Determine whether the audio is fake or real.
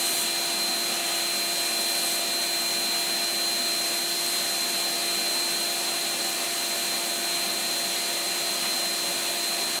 real